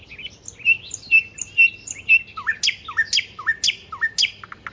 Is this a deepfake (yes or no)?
no